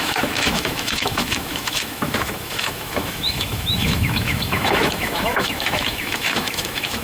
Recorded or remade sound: remade